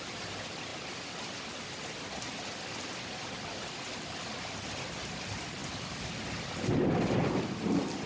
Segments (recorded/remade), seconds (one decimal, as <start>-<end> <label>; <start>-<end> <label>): 0.0-8.1 recorded